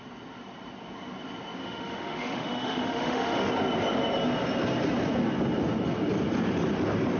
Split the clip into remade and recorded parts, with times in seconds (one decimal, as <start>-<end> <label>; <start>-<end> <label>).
0.0-1.6 recorded; 1.6-3.5 remade; 3.5-7.2 recorded